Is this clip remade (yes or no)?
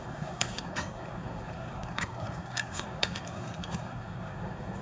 yes